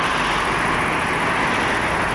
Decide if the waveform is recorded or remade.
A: recorded